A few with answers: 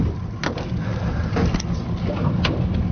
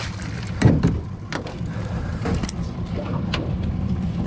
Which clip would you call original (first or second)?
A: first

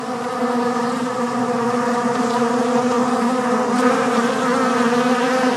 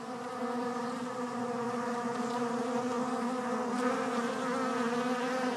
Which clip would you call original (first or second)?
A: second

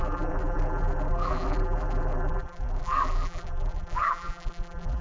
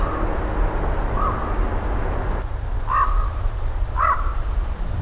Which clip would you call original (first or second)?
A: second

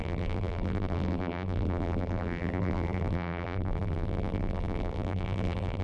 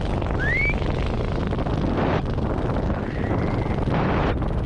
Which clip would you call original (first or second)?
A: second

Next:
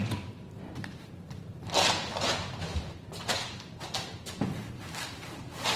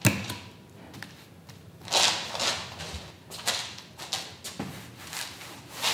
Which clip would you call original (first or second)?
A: second